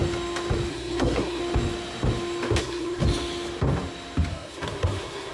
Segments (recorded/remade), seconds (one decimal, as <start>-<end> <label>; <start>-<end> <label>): 0.0-0.7 recorded; 0.7-1.4 remade; 1.4-2.6 recorded; 2.6-3.0 remade; 3.0-4.3 recorded; 4.3-5.3 remade